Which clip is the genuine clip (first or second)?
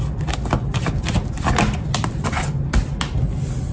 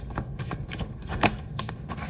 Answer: first